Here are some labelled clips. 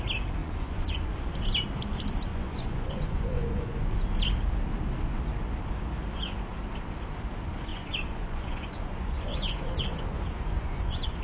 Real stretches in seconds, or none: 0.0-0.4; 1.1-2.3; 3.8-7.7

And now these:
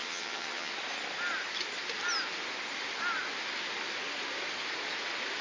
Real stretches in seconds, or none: 0.7-5.4